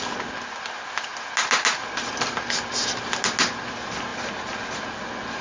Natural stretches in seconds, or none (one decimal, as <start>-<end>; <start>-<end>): 0.0-5.4